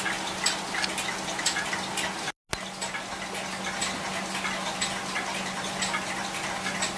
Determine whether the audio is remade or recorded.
recorded